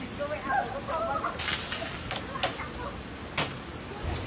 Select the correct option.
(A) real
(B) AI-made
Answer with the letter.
A